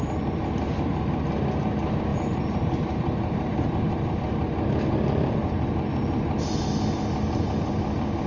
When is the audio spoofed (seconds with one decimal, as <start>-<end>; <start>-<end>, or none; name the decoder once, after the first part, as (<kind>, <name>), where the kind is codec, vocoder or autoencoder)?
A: 2.1-4.1 (vocoder, BigVGAN v2); 5.4-6.5